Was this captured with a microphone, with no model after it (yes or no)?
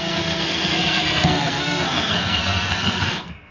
no